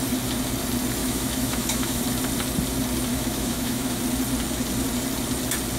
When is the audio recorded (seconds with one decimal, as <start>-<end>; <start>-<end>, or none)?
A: 0.0-1.0; 2.0-3.1; 4.0-5.8